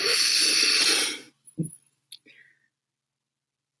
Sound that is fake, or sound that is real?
real